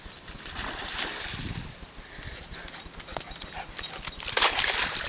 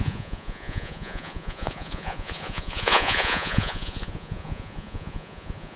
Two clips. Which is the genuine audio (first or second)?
first